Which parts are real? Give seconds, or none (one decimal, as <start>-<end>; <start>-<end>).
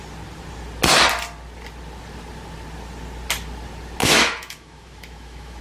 0.0-4.0